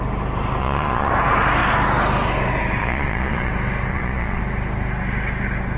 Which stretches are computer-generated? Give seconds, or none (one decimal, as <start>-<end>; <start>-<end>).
0.6-1.1; 2.8-3.5; 3.9-4.4